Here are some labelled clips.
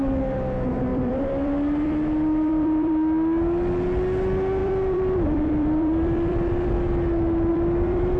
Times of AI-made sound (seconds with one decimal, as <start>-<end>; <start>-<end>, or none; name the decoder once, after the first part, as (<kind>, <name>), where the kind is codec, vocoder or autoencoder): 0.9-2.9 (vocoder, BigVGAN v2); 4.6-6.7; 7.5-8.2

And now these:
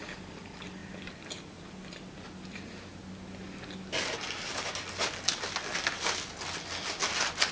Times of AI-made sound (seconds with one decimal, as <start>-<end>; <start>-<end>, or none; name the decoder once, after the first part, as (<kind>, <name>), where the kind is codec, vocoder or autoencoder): none

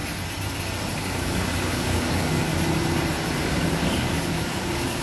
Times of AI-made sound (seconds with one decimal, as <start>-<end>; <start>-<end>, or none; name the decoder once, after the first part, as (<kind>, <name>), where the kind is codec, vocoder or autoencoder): 0.9-2.5 (codec, DAC); 3.4-5.0

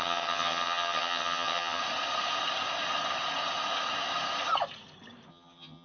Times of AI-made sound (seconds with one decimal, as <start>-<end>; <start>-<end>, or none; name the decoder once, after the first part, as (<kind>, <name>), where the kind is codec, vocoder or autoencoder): 0.0-1.8 (vocoder, HiFi-GAN); 5.3-5.8

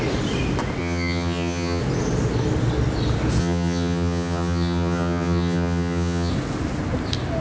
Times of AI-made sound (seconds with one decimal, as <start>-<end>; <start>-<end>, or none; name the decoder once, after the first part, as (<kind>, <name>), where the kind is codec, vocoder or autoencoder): 0.8-1.8 (vocoder, HiFi-GAN); 3.4-6.3